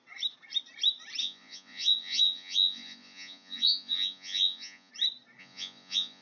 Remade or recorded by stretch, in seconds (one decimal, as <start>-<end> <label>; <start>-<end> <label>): 0.0-1.2 recorded; 1.2-4.9 remade; 4.9-5.4 recorded; 5.4-6.2 remade